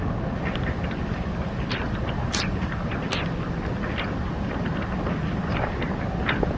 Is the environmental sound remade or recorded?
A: recorded